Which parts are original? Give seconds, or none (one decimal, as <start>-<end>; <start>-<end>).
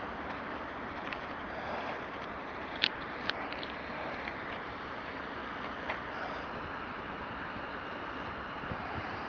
5.4-6.4; 7.7-8.5